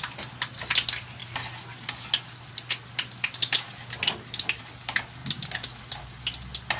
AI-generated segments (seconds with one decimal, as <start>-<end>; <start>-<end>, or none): none